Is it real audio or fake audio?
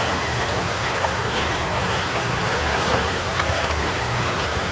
fake